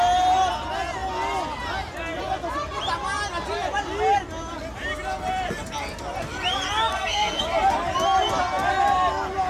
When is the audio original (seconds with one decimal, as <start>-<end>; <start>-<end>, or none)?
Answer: 0.0-6.9; 7.4-9.5